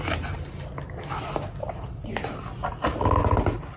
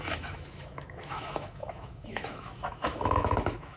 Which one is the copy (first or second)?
second